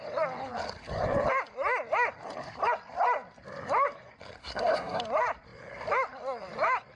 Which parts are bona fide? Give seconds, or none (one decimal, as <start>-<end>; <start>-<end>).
0.0-4.4; 5.0-7.0